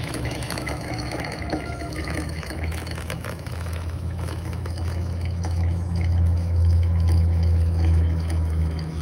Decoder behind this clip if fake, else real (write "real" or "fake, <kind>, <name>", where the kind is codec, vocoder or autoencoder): fake, autoencoder, DAC-VAE